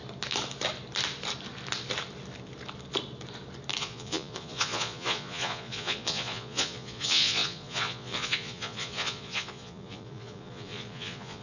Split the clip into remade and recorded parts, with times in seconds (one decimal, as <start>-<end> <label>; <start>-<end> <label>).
0.0-3.8 recorded; 3.8-11.4 remade